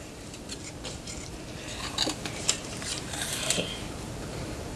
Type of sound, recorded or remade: remade